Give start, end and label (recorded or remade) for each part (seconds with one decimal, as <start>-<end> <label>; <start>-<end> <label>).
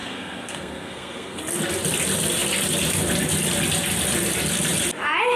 0.0-1.4 remade; 1.4-5.4 recorded